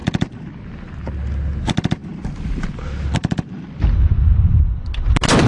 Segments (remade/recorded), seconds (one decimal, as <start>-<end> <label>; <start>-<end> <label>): 0.0-0.9 remade; 0.9-3.2 recorded; 3.2-4.6 remade; 4.6-5.5 recorded